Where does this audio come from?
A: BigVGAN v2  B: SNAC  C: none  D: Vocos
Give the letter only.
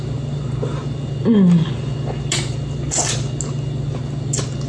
C